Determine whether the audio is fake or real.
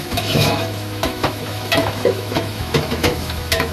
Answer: fake